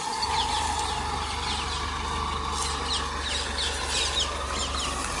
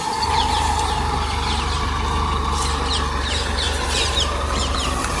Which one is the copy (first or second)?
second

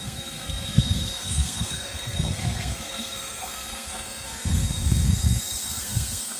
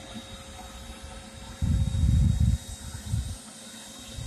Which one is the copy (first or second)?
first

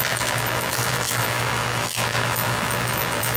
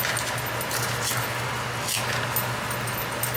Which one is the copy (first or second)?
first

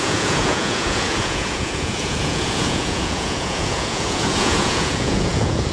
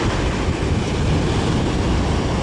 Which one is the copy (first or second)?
first